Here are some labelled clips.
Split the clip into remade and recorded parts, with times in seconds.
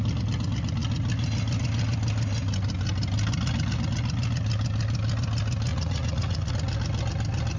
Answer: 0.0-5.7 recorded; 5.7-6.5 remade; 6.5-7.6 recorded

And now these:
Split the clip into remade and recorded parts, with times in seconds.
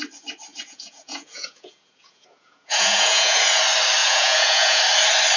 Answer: 0.0-0.5 recorded; 0.5-3.6 remade; 3.6-4.0 recorded; 4.0-4.8 remade; 4.8-5.4 recorded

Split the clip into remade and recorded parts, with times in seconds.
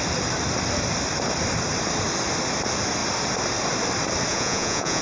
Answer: 0.0-4.3 recorded; 4.3-5.0 remade